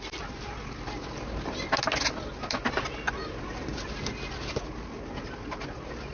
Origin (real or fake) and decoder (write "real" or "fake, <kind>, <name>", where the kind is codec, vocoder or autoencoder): real